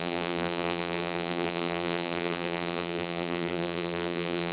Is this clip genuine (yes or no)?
no